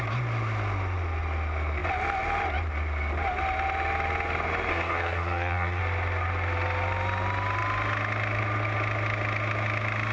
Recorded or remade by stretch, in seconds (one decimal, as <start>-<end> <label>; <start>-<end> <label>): 0.0-4.7 recorded; 4.7-5.8 remade; 5.8-10.1 recorded